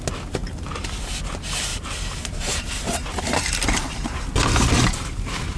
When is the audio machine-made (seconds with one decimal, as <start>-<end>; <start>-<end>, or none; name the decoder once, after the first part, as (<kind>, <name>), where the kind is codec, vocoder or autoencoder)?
0.4-0.9 (vocoder, BigVGAN v2); 1.7-4.2